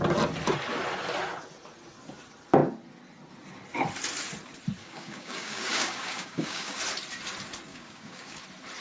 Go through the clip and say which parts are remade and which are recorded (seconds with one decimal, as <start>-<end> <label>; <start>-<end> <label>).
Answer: 0.0-4.8 recorded; 4.8-6.8 remade; 6.8-7.7 recorded; 7.7-8.4 remade; 8.4-8.8 recorded